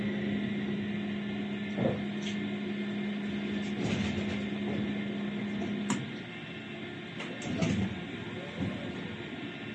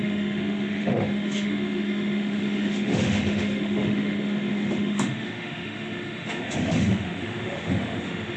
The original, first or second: first